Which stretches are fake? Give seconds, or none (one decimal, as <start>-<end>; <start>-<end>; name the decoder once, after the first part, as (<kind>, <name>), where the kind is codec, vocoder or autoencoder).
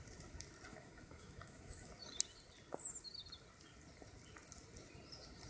0.7-1.9 (autoencoder, DAC-VAE)